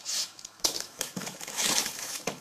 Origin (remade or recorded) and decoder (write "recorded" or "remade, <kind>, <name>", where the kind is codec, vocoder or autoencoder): remade, autoencoder, DAC-VAE